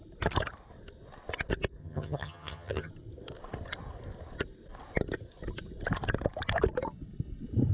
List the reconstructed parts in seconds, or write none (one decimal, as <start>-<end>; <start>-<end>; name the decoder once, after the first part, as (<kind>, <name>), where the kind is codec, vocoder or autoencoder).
1.8-2.9 (vocoder, HiFi-GAN)